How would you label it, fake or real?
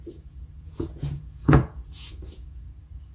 fake